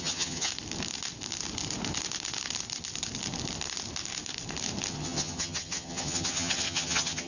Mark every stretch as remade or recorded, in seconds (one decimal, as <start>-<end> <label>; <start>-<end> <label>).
0.0-0.5 remade; 0.5-4.9 recorded; 4.9-7.3 remade